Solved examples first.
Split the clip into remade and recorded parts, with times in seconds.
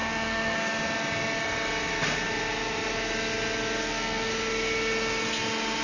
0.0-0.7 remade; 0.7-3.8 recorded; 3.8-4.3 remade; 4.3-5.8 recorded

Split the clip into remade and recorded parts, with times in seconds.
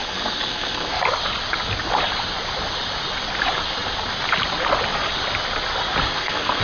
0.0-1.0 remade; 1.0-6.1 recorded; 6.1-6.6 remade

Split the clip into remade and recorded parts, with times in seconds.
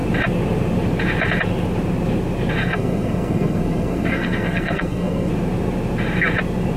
0.0-2.6 recorded; 2.6-5.3 remade; 5.3-6.8 recorded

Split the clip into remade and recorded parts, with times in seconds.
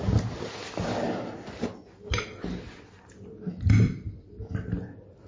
0.0-5.3 recorded